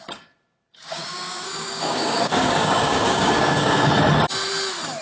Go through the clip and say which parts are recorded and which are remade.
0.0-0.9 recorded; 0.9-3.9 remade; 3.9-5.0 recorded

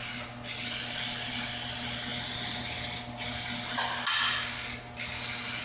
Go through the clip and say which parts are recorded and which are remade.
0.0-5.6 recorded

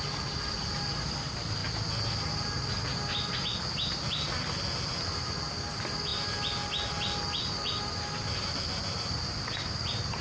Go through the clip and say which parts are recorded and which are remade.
0.0-10.2 recorded